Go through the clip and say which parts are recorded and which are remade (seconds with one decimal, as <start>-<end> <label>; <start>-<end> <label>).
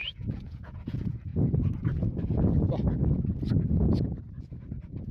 0.0-1.3 remade; 1.3-4.4 recorded; 4.4-5.1 remade